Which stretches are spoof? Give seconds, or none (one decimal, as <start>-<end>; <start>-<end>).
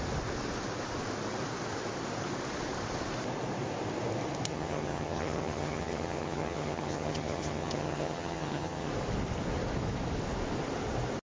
4.5-8.9